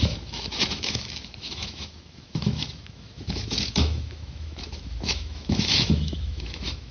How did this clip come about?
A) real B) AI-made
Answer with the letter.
B